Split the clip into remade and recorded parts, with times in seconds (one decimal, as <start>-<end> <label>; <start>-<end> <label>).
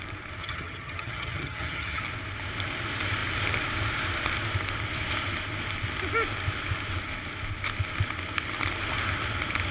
0.0-0.4 recorded; 0.4-2.0 remade; 2.0-9.7 recorded